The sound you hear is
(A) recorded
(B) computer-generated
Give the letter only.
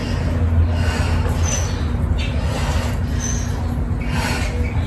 A